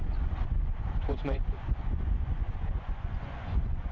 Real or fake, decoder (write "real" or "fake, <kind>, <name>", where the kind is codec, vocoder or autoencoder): fake, vocoder, Vocos